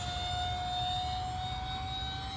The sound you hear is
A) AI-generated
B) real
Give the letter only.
B